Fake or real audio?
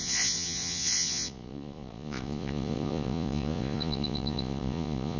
fake